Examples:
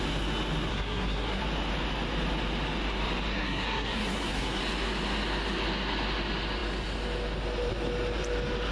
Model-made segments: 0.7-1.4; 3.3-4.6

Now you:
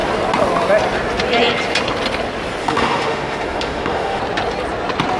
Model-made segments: 2.6-4.2

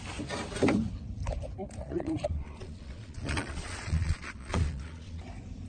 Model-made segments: 1.8-5.2

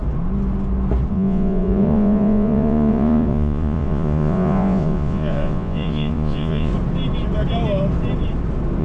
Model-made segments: 1.1-6.7

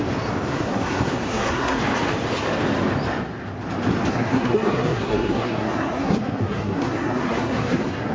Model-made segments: 0.5-1.8; 4.1-8.1

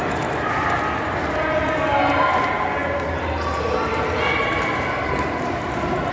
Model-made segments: none